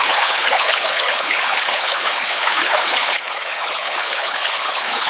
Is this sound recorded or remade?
remade